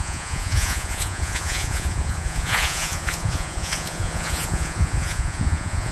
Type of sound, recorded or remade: remade